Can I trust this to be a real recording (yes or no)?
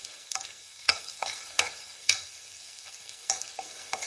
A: no